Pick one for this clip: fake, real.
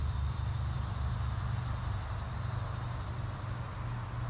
real